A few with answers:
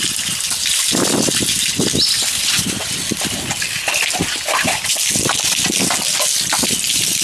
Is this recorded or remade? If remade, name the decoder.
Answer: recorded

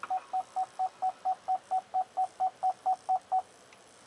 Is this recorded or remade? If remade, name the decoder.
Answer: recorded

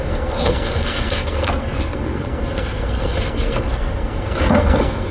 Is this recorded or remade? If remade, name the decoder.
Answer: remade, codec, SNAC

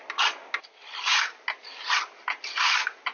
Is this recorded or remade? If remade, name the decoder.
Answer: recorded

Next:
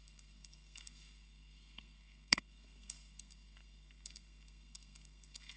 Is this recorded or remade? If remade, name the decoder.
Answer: remade, codec, SNAC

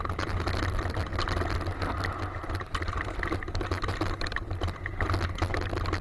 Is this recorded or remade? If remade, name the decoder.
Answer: recorded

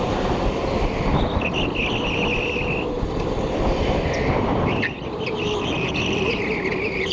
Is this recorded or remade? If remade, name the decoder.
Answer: recorded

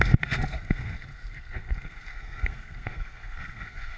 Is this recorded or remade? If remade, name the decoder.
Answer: remade, codec, SNAC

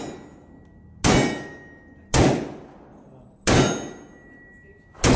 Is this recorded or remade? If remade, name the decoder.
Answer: recorded